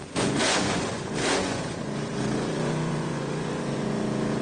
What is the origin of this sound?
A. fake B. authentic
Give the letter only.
A